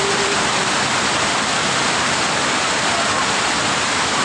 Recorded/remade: recorded